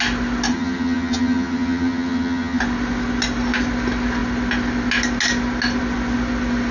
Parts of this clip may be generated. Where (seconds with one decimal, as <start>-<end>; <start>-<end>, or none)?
0.5-2.6